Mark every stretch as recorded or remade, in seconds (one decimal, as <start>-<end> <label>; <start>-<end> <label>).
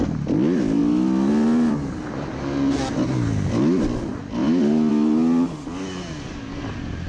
0.0-7.1 recorded